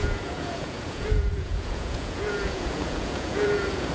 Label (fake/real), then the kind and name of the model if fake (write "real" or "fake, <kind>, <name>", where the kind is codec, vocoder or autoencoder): fake, vocoder, Vocos